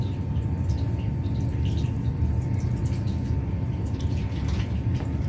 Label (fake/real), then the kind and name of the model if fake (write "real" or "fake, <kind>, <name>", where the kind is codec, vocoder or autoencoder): real